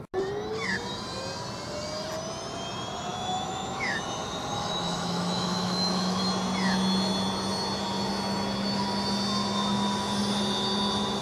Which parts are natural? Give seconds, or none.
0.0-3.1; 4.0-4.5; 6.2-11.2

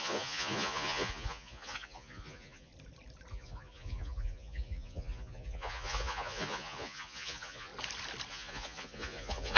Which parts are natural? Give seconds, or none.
2.7-3.3; 7.7-8.3

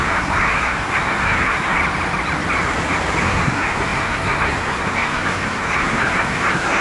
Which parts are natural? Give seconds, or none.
1.8-3.2

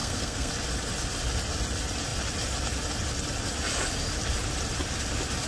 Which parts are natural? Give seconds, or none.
0.5-5.5